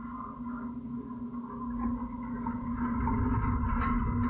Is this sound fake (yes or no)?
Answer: no